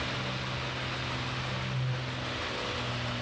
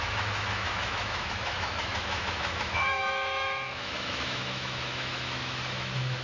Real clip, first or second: first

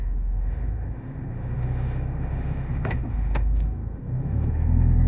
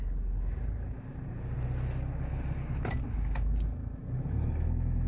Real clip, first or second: second